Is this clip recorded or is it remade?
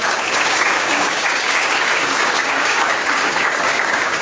remade